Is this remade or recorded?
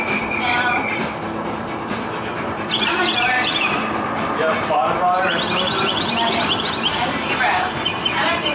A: remade